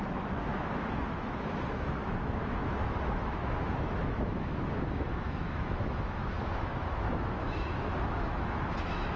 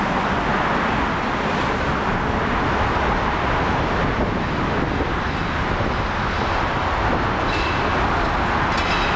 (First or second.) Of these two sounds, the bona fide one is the second